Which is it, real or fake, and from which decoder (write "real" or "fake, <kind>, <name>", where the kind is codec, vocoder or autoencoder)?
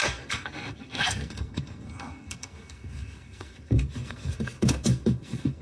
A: fake, codec, SNAC